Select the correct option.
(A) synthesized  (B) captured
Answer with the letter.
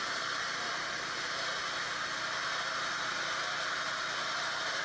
B